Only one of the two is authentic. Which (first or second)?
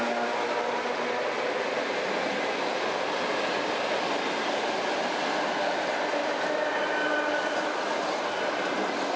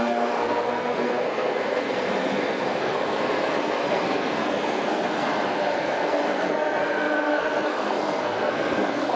first